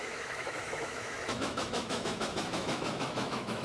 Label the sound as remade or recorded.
remade